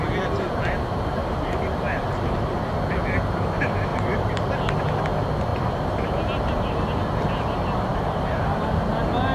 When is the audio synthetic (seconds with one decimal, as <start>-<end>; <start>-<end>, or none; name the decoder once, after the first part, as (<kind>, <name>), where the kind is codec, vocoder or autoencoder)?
1.2-2.7 (vocoder, BigVGAN v2); 3.9-4.6; 5.5-6.1; 7.9-8.9

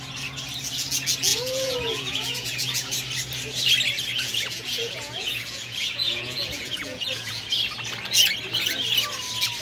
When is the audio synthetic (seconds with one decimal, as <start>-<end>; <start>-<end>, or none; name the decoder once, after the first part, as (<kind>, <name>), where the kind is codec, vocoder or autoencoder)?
1.3-2.9 (vocoder, Vocos); 4.1-7.4

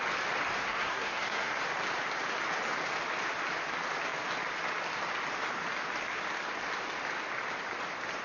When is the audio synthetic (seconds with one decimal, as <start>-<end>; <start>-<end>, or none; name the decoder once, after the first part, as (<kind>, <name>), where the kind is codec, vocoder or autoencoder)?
0.6-1.6 (codec, SNAC)

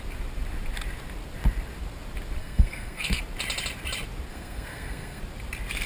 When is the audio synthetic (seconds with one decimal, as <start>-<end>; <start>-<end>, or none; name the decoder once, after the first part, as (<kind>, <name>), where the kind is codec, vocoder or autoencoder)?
2.4-3.2 (codec, SNAC); 4.3-5.2

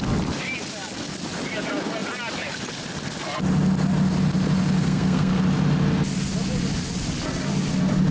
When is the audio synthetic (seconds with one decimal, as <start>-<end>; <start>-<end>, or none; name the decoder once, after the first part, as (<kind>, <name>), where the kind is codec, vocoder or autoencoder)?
4.8-5.4 (codec, SNAC)

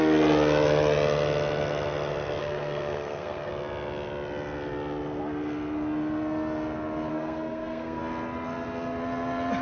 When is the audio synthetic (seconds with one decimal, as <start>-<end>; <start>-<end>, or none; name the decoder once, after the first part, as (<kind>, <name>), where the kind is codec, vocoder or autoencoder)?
2.4-3.5 (codec, SNAC); 7.1-8.0

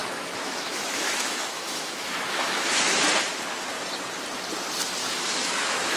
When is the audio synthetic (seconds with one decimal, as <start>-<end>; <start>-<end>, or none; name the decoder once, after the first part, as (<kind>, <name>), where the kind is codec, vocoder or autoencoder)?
0.0-3.1 (autoencoder, DAC-VAE); 5.0-6.0

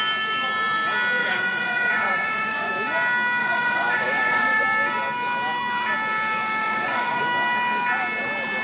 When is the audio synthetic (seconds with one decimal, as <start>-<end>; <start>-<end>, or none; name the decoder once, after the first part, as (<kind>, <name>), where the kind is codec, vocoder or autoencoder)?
1.2-2.7 (vocoder, Vocos); 3.4-4.6; 6.6-7.2